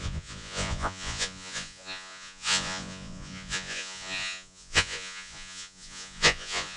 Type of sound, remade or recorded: remade